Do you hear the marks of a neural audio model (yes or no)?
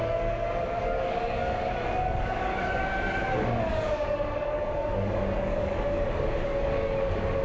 yes